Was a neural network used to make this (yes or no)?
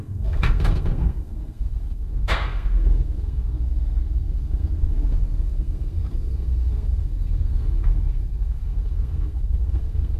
yes